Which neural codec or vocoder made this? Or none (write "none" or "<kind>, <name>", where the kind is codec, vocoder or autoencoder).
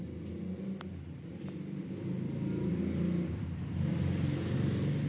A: none